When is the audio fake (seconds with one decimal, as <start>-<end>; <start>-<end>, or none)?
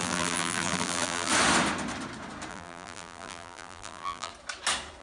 0.0-1.3; 2.5-4.3